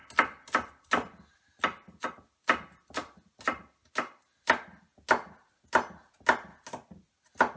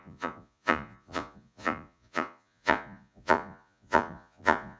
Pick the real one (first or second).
first